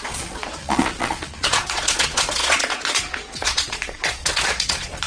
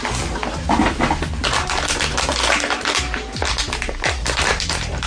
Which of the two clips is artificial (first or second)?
first